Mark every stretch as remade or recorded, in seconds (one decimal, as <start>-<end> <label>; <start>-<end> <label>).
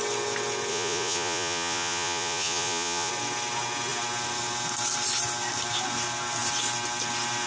0.0-0.7 recorded; 0.7-3.1 remade; 3.1-7.5 recorded